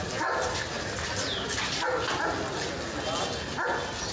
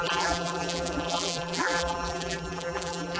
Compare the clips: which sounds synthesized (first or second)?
second